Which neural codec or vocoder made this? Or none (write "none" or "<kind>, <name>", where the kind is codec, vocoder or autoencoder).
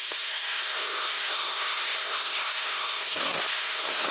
codec, SNAC